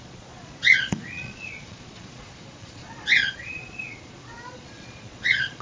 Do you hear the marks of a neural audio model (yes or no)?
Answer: yes